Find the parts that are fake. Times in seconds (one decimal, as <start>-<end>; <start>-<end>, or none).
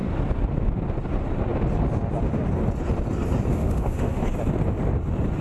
3.5-4.2